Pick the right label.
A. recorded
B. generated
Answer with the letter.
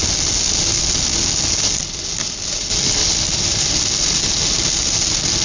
A